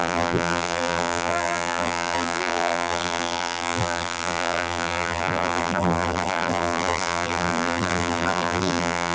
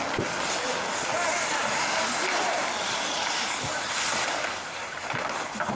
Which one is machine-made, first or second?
first